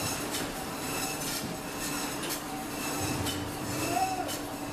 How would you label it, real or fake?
fake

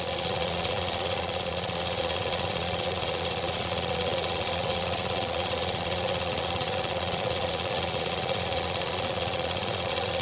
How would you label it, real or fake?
fake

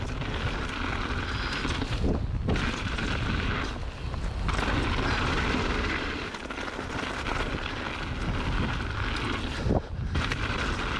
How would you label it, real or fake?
real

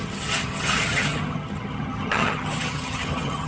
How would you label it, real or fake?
fake